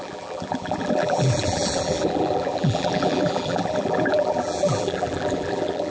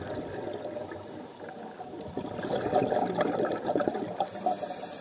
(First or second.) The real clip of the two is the second